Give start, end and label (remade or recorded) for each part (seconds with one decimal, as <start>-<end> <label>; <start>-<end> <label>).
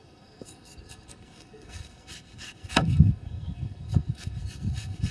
0.0-5.1 remade